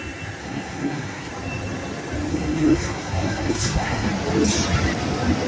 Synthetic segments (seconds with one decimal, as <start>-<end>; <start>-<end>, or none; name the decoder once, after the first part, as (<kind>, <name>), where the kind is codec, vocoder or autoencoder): 0.4-1.3 (codec, SNAC); 2.3-4.1